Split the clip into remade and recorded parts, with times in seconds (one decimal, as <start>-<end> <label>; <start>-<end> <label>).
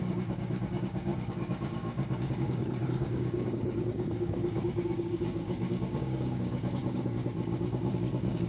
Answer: 0.0-8.5 remade